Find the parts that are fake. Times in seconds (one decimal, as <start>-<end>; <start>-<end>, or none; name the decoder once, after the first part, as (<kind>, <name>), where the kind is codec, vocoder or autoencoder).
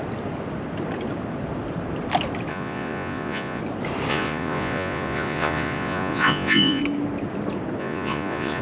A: 2.5-3.6 (vocoder, Vocos); 4.1-6.8; 7.8-8.6